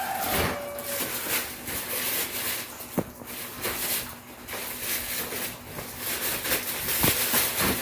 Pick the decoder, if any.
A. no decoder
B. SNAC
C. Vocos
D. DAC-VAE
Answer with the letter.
A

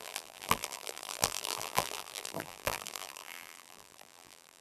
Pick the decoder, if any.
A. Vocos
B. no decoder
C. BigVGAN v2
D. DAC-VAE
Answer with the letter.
C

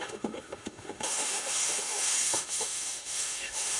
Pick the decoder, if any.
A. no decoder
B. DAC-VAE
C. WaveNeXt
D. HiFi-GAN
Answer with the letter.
B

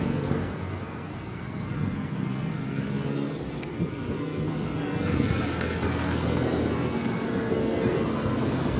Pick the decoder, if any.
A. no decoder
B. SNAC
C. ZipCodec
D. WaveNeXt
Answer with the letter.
B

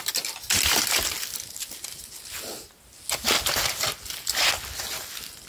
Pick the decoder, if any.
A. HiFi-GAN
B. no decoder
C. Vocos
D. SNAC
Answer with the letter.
B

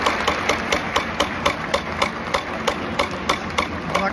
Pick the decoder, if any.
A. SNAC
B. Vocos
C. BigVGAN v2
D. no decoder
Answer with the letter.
D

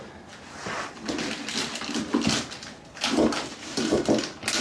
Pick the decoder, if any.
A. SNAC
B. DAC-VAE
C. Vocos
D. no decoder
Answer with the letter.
D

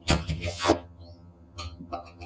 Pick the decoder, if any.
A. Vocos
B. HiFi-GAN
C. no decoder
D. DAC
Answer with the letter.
B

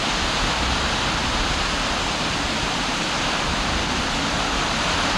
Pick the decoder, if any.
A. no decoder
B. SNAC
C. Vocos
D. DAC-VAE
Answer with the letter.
A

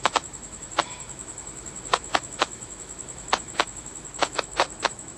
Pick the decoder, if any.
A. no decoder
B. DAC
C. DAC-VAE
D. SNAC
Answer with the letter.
C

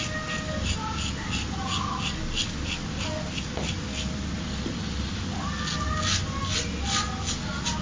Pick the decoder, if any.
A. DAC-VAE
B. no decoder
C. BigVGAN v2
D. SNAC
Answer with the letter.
B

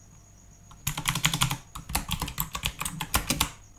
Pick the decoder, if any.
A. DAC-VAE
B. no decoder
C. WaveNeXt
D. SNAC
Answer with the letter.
B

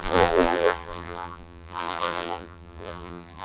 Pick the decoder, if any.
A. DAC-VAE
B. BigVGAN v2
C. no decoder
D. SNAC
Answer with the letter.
B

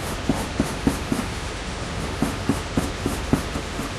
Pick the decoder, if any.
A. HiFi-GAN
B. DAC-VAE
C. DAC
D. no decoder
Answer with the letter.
B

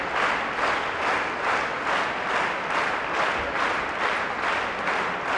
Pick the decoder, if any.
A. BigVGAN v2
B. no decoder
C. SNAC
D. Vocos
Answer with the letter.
B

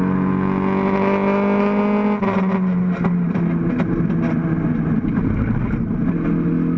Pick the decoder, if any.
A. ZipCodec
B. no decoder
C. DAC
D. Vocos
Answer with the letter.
B